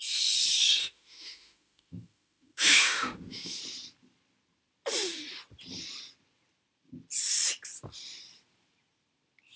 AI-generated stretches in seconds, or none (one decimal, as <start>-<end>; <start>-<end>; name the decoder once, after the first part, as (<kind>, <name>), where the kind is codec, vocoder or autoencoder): 0.8-3.6 (autoencoder, DAC-VAE)